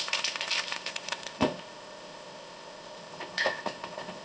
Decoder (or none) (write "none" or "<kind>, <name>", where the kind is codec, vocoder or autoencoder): codec, ZipCodec